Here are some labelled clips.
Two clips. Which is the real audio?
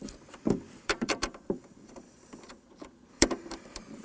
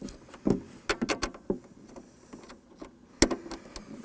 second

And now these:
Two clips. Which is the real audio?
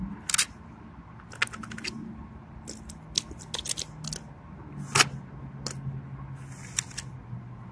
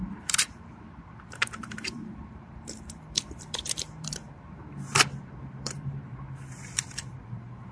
first